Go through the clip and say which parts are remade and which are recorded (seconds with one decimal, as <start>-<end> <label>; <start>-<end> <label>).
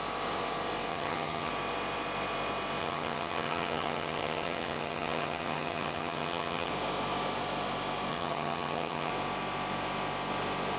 0.0-0.9 recorded; 0.9-1.5 remade; 1.5-2.8 recorded; 2.8-6.7 remade; 6.7-8.1 recorded; 8.1-9.1 remade; 9.1-10.8 recorded